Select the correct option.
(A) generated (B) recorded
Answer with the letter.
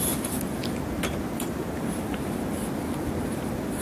B